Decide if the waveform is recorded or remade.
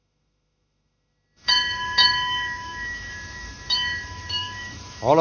remade